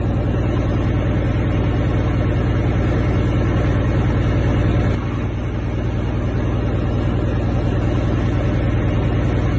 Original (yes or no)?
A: yes